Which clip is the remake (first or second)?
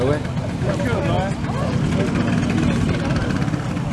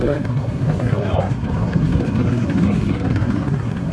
second